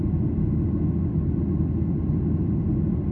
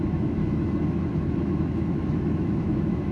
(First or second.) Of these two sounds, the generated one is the second